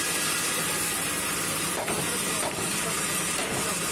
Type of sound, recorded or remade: recorded